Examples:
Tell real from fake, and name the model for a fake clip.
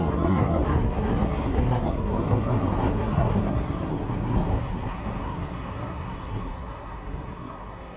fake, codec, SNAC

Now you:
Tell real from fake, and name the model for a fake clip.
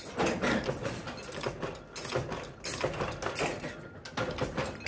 real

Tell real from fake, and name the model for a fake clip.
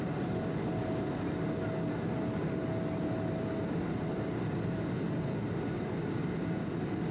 real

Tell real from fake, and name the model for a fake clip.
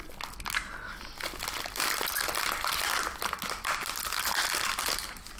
real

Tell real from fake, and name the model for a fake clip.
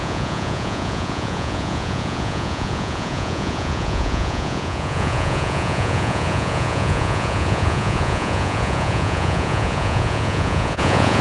fake, vocoder, Vocos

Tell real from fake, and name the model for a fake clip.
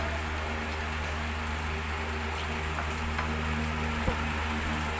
real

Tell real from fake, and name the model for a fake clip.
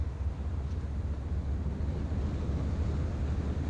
real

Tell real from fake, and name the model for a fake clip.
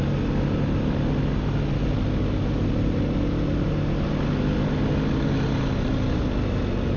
real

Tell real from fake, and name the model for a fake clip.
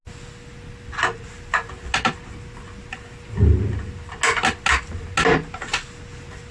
real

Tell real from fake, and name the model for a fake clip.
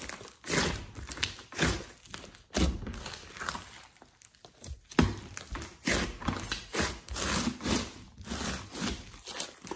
real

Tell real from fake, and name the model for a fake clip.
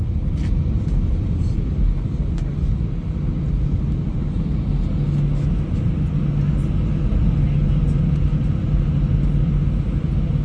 real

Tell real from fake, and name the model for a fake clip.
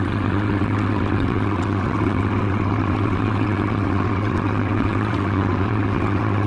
fake, vocoder, WaveNeXt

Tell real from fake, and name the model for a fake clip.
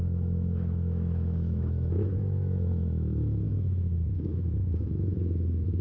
fake, autoencoder, DAC-VAE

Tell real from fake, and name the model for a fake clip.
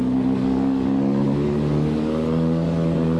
fake, codec, DAC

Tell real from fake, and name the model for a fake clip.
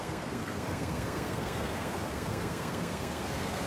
fake, codec, SNAC